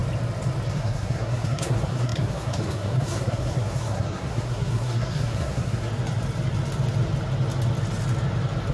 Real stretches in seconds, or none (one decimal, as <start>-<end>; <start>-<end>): 0.0-0.7; 5.9-8.7